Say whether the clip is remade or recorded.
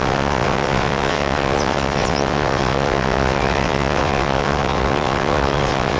remade